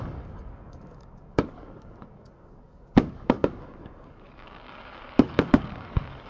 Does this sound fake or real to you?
fake